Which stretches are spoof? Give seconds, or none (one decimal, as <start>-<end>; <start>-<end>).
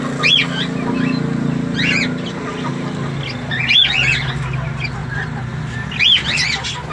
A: none